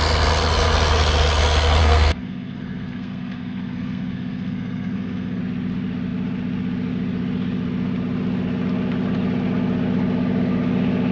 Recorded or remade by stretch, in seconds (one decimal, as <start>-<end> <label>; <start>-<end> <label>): 0.0-1.8 recorded; 1.8-5.4 remade; 5.4-11.1 recorded

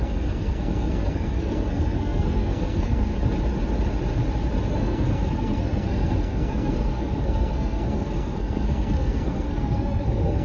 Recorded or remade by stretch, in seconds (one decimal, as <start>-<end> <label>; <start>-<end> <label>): 0.0-3.1 remade; 3.1-4.7 recorded; 4.7-10.4 remade

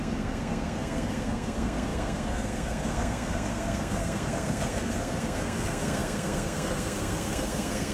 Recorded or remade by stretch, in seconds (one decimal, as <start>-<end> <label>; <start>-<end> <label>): 0.0-7.9 remade

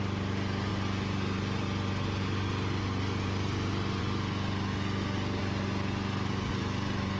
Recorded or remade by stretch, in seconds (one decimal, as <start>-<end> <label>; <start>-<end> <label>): 0.0-7.2 recorded

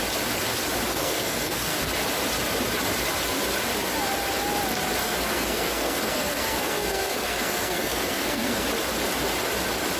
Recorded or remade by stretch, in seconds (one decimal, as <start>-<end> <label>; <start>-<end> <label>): 0.0-0.9 recorded; 0.9-1.9 remade; 1.9-5.0 recorded; 5.0-8.7 remade; 8.7-10.0 recorded

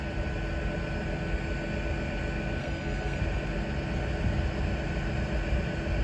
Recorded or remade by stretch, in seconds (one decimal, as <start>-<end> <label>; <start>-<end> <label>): 0.0-2.6 recorded; 2.6-3.2 remade; 3.2-6.0 recorded